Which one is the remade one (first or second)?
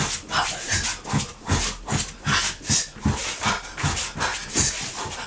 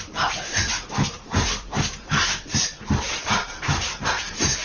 second